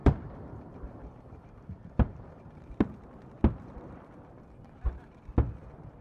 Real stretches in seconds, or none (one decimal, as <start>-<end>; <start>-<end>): 2.6-6.0